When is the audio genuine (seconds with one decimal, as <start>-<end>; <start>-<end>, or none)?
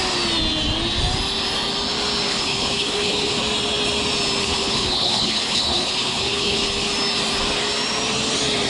0.0-2.3; 3.4-4.4; 6.9-8.7